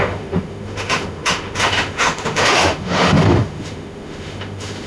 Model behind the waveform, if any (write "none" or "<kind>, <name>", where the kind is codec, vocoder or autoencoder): autoencoder, DAC-VAE